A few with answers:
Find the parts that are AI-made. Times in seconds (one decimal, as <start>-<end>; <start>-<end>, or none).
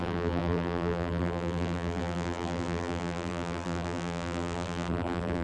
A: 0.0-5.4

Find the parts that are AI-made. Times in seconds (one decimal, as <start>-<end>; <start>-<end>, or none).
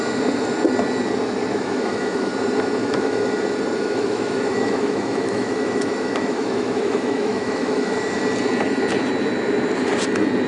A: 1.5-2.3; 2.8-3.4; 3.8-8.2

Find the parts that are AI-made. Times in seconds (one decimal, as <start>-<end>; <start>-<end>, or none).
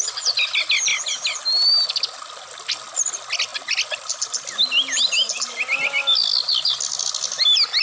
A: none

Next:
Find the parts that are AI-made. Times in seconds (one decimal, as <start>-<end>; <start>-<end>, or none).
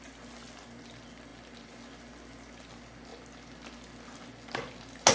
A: none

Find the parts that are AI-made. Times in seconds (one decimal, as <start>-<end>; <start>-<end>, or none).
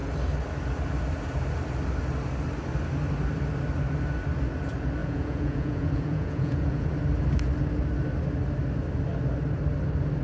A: 5.0-6.9